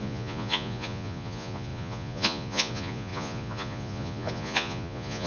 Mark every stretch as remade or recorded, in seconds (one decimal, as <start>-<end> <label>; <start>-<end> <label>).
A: 0.0-5.3 remade